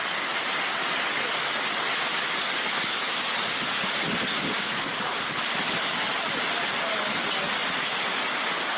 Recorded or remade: recorded